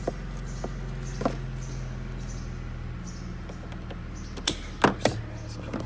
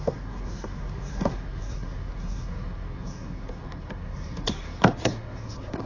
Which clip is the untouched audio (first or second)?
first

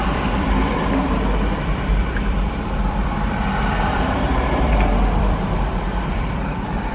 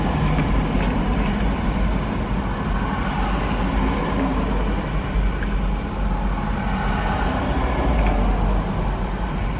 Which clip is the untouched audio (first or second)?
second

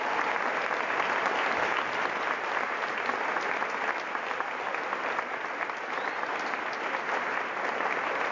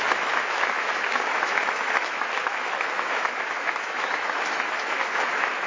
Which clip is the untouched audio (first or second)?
first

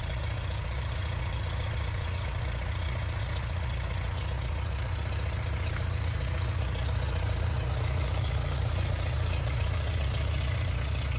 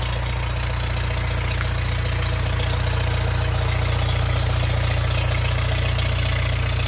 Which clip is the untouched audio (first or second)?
second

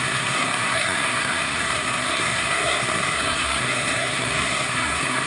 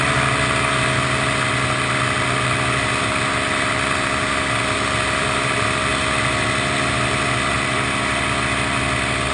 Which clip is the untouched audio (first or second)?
second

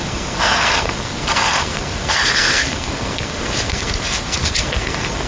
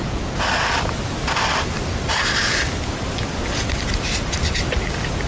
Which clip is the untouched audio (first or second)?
second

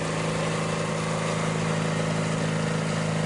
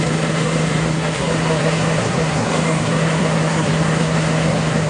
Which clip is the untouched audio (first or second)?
first